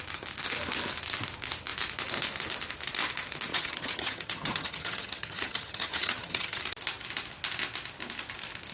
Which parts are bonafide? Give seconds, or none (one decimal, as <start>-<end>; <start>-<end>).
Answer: 0.0-3.5; 6.6-8.7